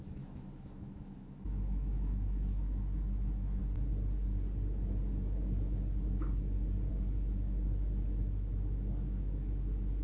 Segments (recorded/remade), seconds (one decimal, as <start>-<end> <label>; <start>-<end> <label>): 0.0-3.6 remade; 3.6-6.9 recorded; 6.9-10.0 remade